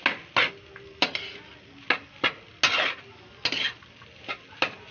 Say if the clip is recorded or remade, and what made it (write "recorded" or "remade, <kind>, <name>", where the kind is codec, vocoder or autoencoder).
recorded